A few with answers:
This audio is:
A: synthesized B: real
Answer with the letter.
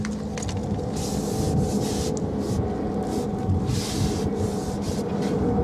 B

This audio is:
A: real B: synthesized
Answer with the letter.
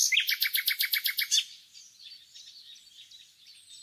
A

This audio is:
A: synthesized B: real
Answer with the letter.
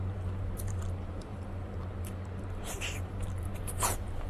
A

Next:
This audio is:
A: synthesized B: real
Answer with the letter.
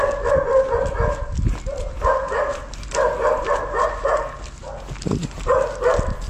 B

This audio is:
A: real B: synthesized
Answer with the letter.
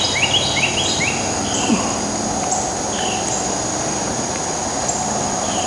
A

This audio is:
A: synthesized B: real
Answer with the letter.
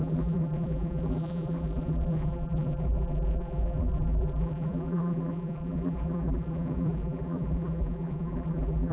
A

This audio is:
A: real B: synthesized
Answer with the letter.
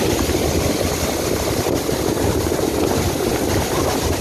A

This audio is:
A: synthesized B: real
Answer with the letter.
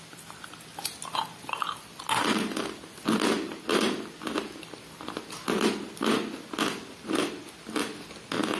B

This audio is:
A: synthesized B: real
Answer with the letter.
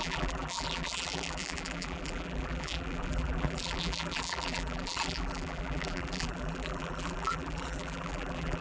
A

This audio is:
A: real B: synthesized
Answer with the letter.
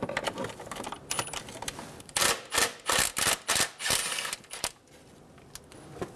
A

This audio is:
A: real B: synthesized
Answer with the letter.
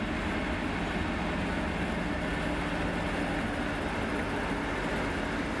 A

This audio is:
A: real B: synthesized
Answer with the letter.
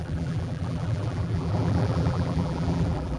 B